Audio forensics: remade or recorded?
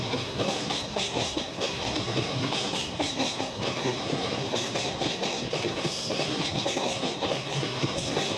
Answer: remade